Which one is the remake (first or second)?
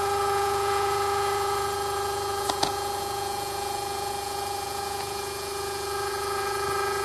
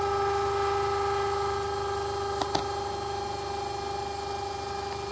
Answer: first